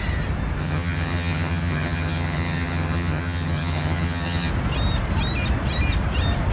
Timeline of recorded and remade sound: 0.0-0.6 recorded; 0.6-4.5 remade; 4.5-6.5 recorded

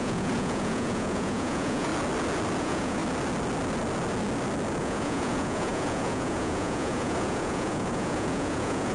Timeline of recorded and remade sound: 0.0-1.9 remade; 1.9-2.6 recorded; 2.6-3.0 remade; 3.0-4.8 recorded; 4.8-8.9 remade

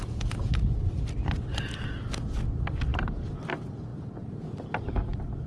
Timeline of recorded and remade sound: 0.0-1.5 recorded; 1.5-2.1 remade; 2.1-2.9 recorded; 2.9-3.5 remade; 3.5-3.9 recorded; 3.9-5.0 remade; 5.0-5.5 recorded

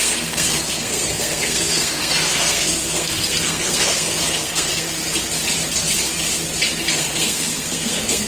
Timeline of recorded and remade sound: 0.0-5.0 remade; 5.0-6.9 recorded; 6.9-8.3 remade